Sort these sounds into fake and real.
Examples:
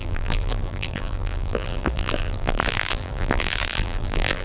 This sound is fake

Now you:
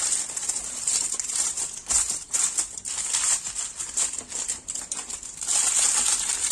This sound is fake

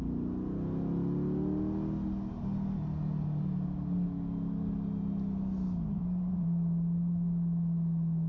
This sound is real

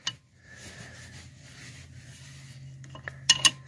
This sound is real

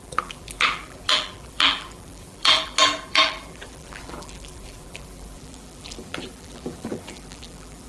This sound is fake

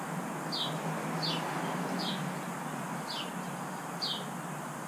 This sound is real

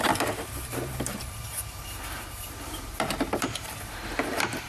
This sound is fake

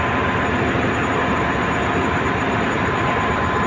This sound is real